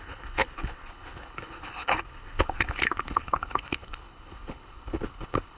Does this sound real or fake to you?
fake